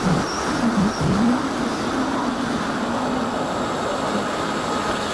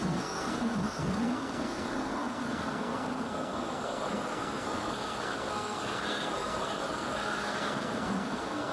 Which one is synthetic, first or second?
second